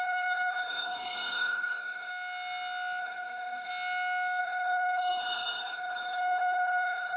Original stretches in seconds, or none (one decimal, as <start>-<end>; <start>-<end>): 2.1-3.0; 3.7-4.4